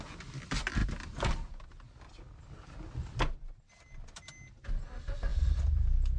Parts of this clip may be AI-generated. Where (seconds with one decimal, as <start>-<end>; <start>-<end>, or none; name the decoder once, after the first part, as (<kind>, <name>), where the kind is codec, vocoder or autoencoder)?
none